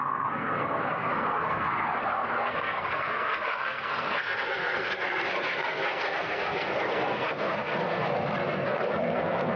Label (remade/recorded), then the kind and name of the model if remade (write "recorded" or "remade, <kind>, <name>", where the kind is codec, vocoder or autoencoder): remade, codec, SNAC